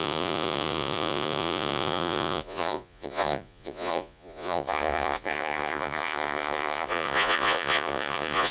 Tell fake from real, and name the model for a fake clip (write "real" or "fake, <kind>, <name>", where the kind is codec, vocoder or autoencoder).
fake, vocoder, Vocos